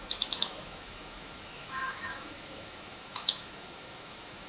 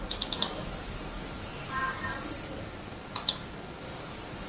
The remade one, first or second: first